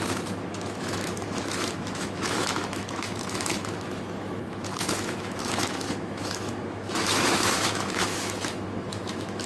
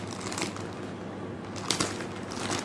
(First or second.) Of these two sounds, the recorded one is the second